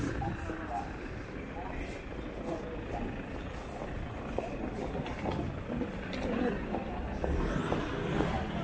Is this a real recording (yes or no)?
yes